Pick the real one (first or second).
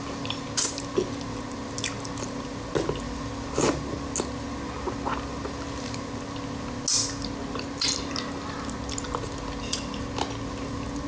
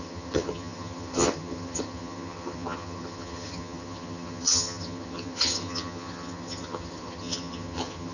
first